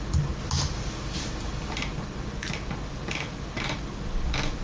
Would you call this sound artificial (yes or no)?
no